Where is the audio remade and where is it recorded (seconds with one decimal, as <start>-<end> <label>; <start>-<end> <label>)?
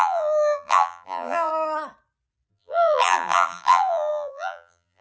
0.0-1.5 remade; 1.5-2.5 recorded; 2.5-5.0 remade